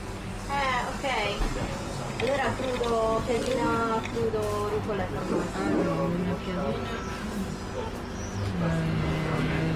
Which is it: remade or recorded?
recorded